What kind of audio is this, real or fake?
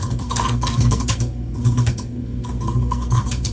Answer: fake